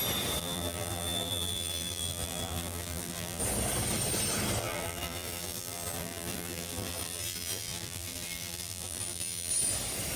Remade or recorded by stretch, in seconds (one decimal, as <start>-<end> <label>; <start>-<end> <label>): 0.0-0.4 recorded; 0.4-3.4 remade; 3.4-4.6 recorded; 4.6-9.5 remade; 9.5-10.2 recorded